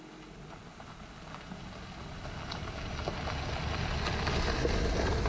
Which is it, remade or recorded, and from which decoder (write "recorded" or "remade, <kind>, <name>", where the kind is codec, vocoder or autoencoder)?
recorded